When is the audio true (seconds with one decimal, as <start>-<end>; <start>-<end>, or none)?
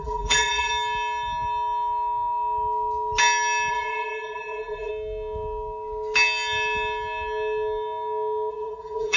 0.7-3.7; 4.9-8.5